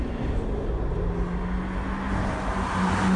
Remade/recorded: recorded